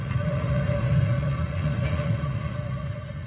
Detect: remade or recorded remade